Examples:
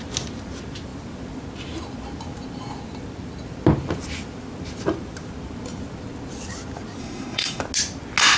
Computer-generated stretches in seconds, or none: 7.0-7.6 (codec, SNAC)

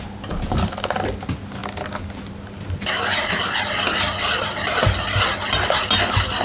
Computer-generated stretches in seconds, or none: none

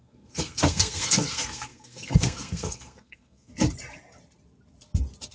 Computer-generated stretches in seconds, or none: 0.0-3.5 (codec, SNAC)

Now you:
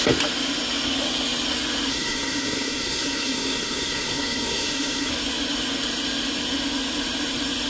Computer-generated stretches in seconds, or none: 1.9-5.1 (codec, SNAC)

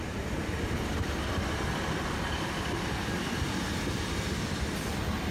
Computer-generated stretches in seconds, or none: none

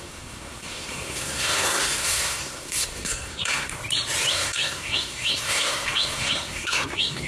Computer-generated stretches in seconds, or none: 0.0-3.8 (codec, SNAC); 4.3-7.3

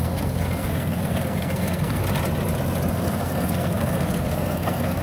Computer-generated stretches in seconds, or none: 0.0-2.0 (codec, SNAC); 2.9-5.0

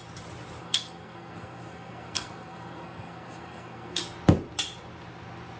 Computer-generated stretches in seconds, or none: 0.6-4.0 (codec, SNAC)